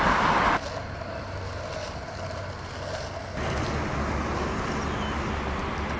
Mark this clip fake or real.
real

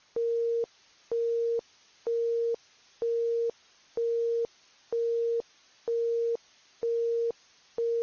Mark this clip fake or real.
real